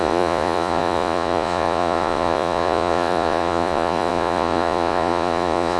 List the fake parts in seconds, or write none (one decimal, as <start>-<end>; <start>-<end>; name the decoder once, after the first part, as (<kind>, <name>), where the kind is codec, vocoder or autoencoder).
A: 0.0-5.8 (vocoder, Vocos)